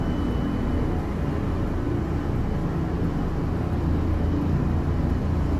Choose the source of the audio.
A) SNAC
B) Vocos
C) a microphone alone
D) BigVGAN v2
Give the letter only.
C